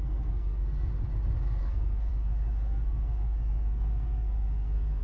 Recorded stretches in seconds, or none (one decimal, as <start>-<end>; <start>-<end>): 0.9-1.6